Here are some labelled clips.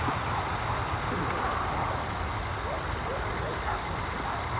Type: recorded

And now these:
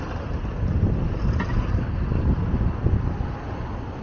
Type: recorded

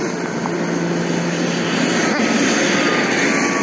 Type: recorded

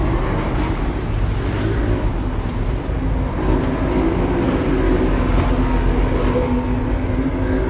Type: recorded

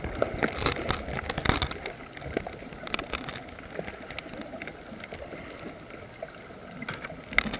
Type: recorded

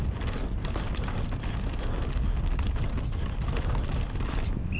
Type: recorded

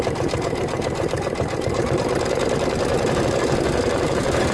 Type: remade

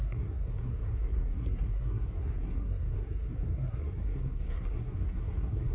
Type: remade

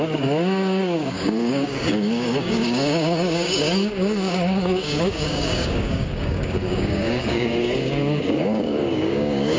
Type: remade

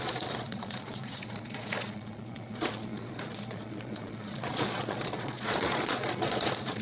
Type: remade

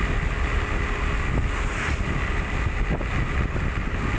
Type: recorded